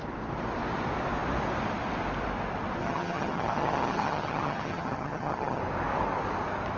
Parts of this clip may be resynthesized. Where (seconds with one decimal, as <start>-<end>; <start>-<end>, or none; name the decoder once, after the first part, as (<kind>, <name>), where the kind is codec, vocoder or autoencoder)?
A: 2.8-5.6 (vocoder, HiFi-GAN)